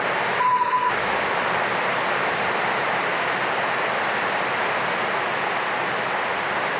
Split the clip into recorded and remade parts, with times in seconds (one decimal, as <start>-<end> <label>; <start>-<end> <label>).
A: 0.0-0.4 recorded; 0.4-0.9 remade; 0.9-6.8 recorded